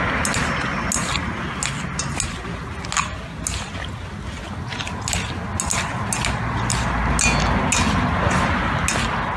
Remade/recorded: recorded